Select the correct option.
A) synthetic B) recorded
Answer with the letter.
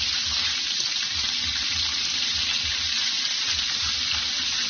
B